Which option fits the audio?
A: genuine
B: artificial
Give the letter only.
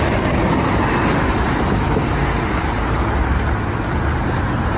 A